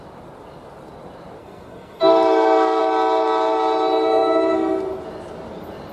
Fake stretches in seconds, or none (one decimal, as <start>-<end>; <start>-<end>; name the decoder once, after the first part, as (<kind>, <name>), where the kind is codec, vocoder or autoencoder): 1.4-2.8 (codec, SNAC)